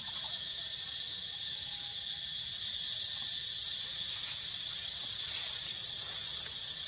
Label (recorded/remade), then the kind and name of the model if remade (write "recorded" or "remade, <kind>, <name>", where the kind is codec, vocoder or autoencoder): recorded